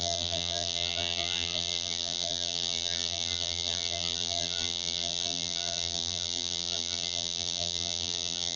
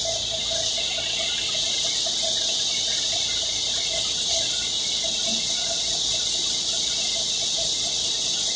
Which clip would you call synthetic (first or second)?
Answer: first